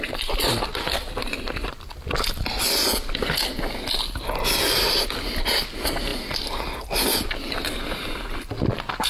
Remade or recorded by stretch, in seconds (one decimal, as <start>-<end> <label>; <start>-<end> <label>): 0.0-9.1 recorded